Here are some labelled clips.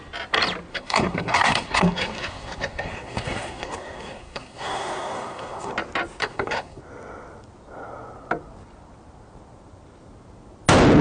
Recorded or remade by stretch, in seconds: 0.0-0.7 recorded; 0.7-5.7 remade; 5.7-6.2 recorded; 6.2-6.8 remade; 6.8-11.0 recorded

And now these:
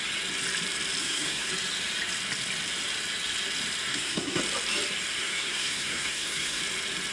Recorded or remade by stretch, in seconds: 0.0-1.0 recorded; 1.0-1.5 remade; 1.5-3.9 recorded; 3.9-4.4 remade; 4.4-5.2 recorded; 5.2-6.6 remade; 6.6-7.1 recorded

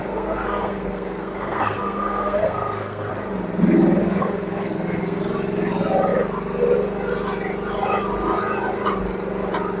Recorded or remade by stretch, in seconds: 0.0-3.1 remade; 3.1-4.0 recorded; 4.0-5.2 remade; 5.2-9.8 recorded

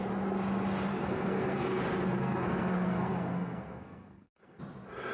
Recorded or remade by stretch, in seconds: 0.0-0.9 recorded; 0.9-1.8 remade; 1.8-2.2 recorded; 2.2-4.6 remade; 4.6-5.1 recorded

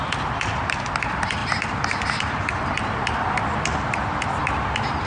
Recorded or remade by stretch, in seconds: 0.0-5.1 recorded

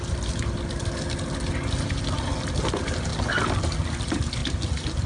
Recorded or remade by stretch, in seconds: 0.0-5.1 recorded

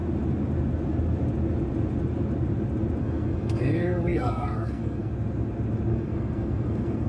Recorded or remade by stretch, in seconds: 0.0-3.0 recorded; 3.0-5.1 remade; 5.1-5.9 recorded; 5.9-7.1 remade